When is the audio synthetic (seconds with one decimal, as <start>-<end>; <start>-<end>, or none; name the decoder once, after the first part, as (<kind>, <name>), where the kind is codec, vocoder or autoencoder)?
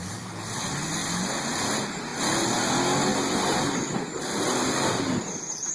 none